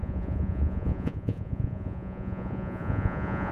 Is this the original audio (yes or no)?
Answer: no